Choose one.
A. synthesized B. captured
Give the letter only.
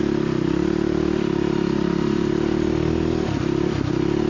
B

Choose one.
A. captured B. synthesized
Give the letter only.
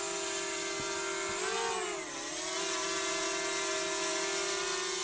A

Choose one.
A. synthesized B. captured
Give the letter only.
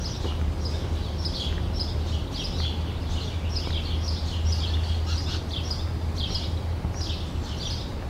B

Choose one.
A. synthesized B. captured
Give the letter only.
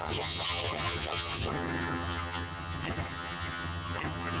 A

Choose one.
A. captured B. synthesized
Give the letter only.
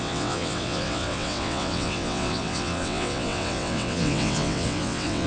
B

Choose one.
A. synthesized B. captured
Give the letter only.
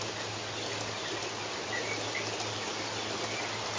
B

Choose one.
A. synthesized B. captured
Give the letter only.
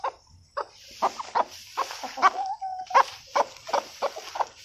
B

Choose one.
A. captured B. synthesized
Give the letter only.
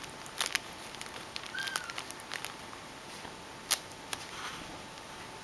A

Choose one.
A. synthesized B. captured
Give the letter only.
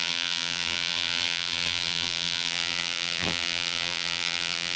A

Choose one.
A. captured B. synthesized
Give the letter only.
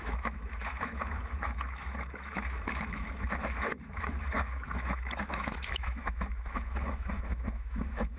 B